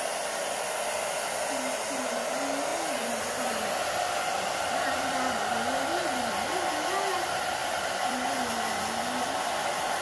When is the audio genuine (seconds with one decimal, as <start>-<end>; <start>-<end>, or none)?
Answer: 0.0-2.7; 3.2-7.6; 8.5-10.0